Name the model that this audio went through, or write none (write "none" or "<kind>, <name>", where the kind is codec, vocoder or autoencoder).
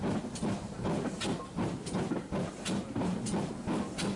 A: none